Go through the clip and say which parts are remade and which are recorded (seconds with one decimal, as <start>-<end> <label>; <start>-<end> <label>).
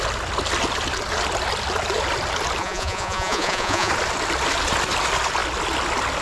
0.0-2.6 recorded; 2.6-3.9 remade; 3.9-6.2 recorded